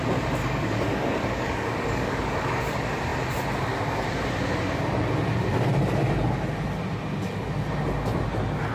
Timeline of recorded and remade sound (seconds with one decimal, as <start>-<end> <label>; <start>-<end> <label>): 0.0-0.4 recorded; 0.4-2.6 remade; 2.6-8.7 recorded